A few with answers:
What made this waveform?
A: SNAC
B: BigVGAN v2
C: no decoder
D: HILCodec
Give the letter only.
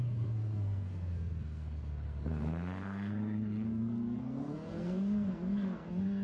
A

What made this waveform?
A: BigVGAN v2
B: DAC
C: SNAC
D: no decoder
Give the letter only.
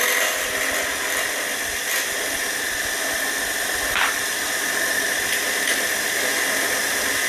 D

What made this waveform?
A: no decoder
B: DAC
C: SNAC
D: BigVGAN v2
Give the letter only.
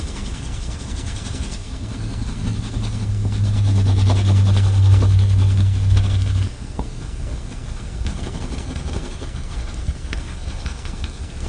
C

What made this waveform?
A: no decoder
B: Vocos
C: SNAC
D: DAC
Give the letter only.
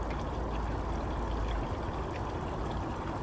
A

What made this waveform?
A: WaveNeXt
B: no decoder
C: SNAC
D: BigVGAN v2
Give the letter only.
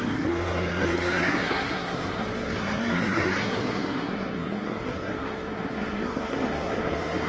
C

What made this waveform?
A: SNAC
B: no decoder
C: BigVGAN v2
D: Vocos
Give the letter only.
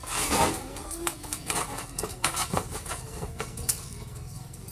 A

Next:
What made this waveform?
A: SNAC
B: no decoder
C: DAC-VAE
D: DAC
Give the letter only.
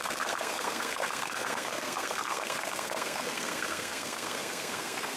A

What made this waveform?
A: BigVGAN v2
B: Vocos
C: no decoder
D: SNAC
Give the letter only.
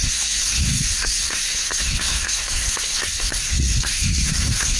D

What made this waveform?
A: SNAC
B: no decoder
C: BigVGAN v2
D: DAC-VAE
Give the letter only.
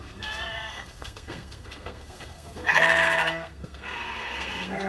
A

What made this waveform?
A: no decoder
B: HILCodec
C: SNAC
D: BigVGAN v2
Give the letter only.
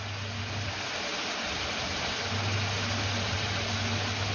A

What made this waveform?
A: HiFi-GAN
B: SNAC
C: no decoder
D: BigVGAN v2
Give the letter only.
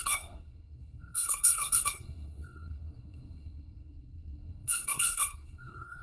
B